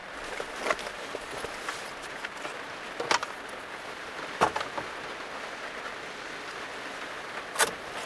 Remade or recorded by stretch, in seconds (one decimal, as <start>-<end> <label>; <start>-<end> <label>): 0.0-8.1 recorded